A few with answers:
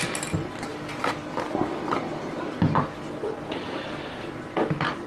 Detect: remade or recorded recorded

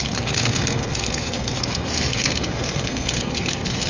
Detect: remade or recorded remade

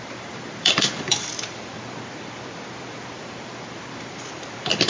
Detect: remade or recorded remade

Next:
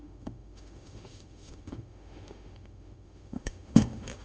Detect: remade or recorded remade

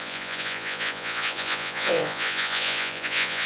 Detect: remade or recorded remade